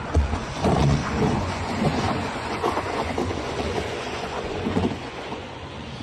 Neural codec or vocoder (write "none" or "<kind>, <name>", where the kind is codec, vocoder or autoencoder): vocoder, Vocos